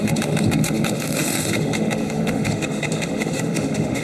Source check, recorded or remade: remade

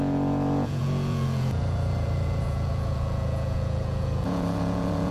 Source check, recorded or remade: remade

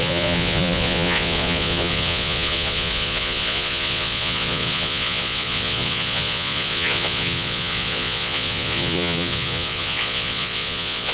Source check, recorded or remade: remade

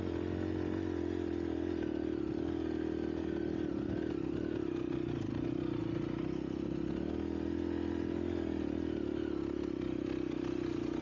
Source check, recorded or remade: recorded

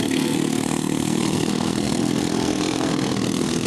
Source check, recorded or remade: remade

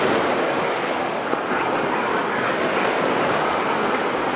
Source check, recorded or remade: remade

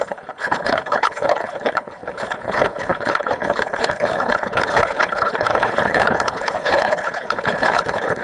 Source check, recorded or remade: remade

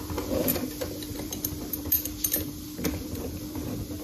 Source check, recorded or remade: remade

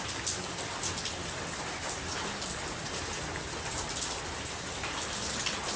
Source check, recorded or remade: remade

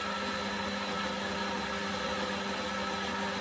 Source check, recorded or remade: recorded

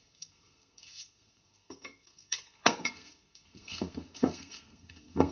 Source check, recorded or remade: remade